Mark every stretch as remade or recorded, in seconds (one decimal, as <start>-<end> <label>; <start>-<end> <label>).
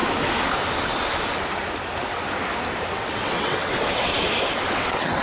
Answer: 0.0-2.9 recorded; 2.9-4.1 remade; 4.1-4.7 recorded; 4.7-5.2 remade